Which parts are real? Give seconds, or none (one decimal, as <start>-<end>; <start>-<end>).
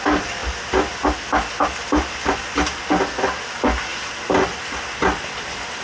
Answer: 0.0-5.8